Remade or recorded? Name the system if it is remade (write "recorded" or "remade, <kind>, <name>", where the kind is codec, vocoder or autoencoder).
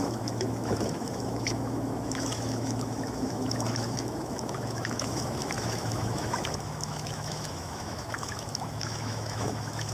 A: remade, autoencoder, DAC-VAE